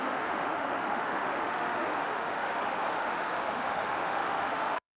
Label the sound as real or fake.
fake